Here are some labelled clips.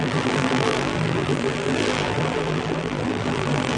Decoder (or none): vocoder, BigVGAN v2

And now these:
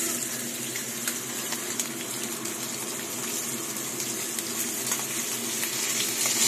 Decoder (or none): none